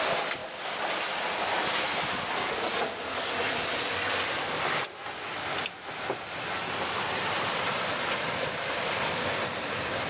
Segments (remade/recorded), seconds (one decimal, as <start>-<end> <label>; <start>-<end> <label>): 0.0-10.1 recorded